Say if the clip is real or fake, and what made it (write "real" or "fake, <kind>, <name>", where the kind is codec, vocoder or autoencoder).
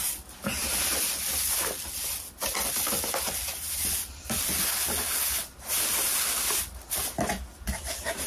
real